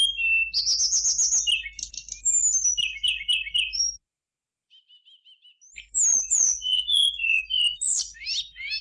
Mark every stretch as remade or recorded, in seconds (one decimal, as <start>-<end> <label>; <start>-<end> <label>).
0.0-6.1 recorded; 6.1-7.4 remade; 7.4-8.8 recorded